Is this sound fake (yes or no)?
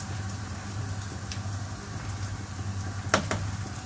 no